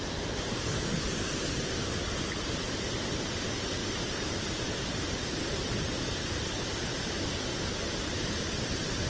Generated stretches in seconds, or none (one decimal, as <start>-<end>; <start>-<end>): 3.8-5.4; 7.5-9.1